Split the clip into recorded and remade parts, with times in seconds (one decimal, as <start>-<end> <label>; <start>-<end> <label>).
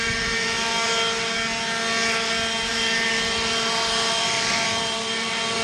0.0-0.9 remade; 0.9-2.7 recorded; 2.7-5.6 remade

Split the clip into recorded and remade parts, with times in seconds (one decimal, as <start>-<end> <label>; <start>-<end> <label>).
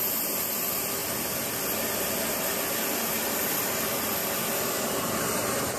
0.0-5.8 recorded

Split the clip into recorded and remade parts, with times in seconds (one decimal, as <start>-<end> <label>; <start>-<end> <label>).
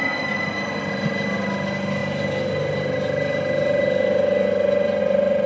0.0-5.5 recorded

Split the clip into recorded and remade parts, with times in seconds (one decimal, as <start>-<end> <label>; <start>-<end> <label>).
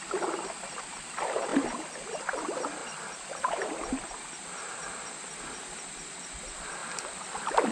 0.0-7.7 recorded